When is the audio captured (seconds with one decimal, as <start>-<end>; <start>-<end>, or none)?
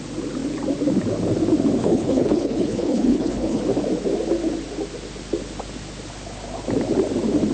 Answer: 0.0-1.8; 3.6-7.5